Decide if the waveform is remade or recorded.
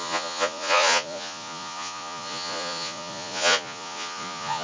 remade